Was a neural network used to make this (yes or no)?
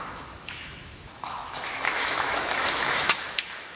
yes